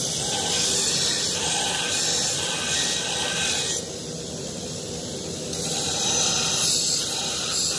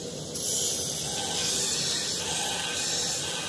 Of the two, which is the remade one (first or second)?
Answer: first